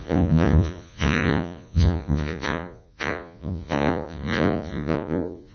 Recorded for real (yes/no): no